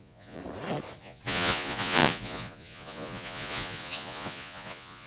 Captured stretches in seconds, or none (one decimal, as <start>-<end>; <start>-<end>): 0.4-1.0